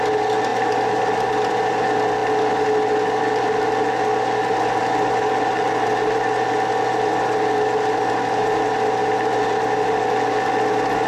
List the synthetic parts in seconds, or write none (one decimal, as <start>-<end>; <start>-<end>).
none